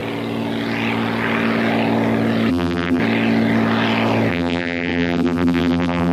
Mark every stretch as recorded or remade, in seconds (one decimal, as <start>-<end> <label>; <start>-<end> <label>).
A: 0.0-2.5 recorded; 2.5-3.0 remade; 3.0-4.3 recorded; 4.3-6.1 remade